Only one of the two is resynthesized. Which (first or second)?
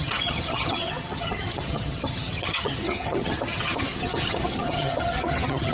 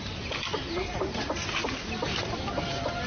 first